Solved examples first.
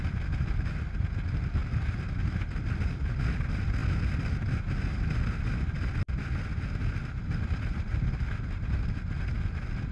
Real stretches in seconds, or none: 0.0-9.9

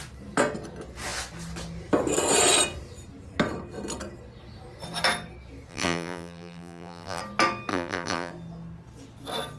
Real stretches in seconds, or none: 0.0-5.7; 7.2-7.7; 8.3-9.6

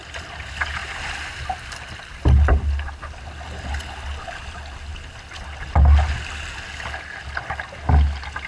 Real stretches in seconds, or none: 0.0-8.5

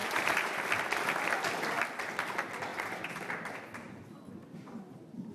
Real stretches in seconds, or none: 0.6-2.7; 3.6-5.3

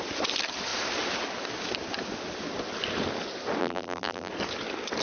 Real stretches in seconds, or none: 0.0-3.6; 4.3-5.0

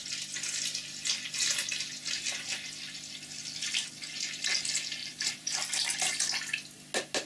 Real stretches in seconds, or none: 0.0-5.0; 6.1-7.3

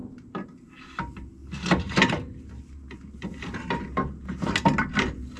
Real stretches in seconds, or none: 0.7-1.4; 4.5-5.4